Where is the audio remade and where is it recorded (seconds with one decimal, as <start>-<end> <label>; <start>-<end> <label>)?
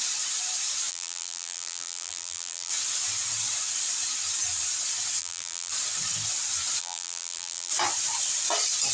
0.0-0.9 recorded; 0.9-2.7 remade; 2.7-5.2 recorded; 5.2-5.7 remade; 5.7-6.8 recorded; 6.8-7.7 remade; 7.7-8.9 recorded